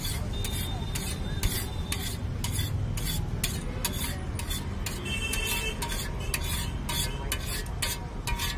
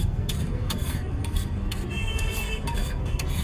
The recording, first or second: first